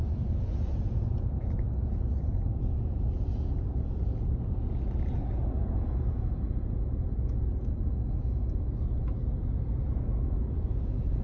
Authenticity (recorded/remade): remade